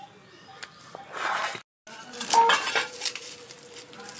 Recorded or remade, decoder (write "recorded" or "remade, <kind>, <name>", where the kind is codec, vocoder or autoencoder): recorded